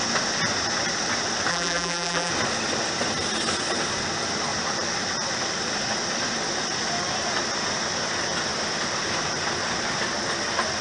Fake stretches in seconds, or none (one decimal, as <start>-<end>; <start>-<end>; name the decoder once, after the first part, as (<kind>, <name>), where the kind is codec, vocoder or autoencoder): 1.5-2.3 (vocoder, BigVGAN v2)